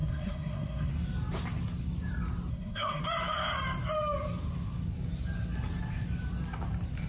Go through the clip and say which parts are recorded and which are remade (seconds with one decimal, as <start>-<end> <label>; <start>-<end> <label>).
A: 0.0-0.9 remade; 0.9-2.5 recorded; 2.5-3.0 remade; 3.0-7.1 recorded